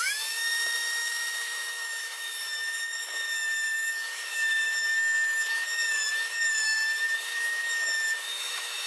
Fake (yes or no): yes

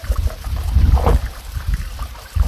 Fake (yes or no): yes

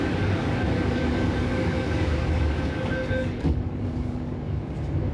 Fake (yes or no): yes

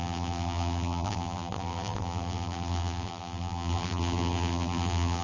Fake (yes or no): yes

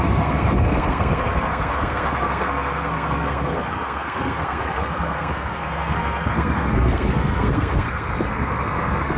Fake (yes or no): yes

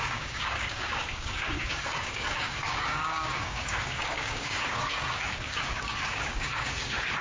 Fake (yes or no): yes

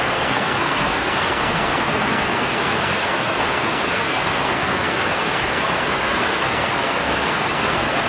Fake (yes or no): yes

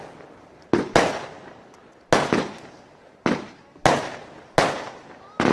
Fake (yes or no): no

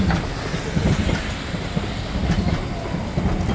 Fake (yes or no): no